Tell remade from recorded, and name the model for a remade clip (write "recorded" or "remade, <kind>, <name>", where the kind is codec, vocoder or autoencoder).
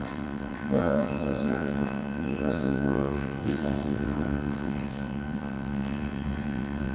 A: remade, vocoder, WaveNeXt